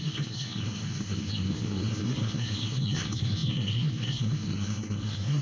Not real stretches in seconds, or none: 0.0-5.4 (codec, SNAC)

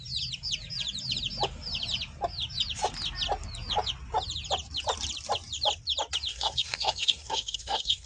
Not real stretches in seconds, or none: 6.3-8.1 (codec, SNAC)

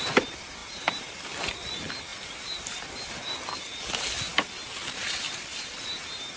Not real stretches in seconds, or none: none

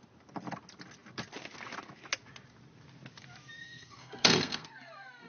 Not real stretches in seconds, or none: 3.6-5.3 (codec, SNAC)

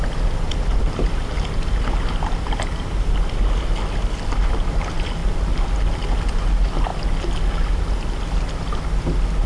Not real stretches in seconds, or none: none

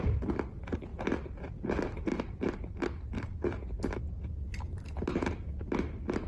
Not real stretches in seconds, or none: none

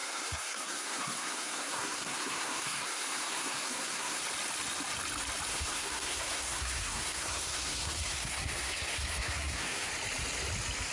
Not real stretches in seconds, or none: 0.0-4.2 (codec, SNAC); 5.5-9.9